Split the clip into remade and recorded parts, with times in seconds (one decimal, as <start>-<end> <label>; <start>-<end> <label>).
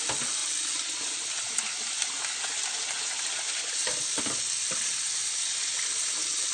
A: 0.0-3.8 recorded; 3.8-4.4 remade; 4.4-6.5 recorded